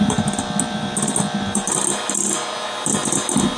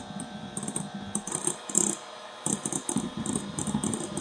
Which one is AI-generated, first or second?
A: second